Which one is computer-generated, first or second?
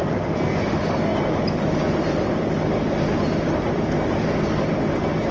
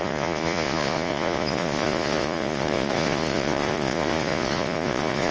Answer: second